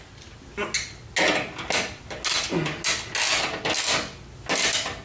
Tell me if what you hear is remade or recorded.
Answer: recorded